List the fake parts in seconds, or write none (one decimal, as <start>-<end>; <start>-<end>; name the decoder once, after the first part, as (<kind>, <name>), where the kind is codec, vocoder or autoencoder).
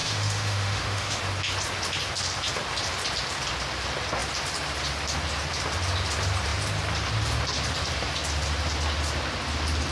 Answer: 0.0-1.2 (autoencoder, DAC-VAE)